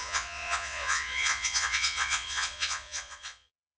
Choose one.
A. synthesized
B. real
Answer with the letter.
A